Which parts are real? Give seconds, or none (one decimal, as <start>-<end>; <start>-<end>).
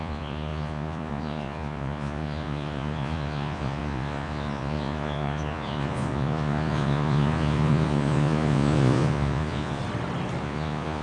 9.8-10.4